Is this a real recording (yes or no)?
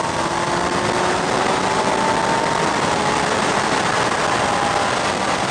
yes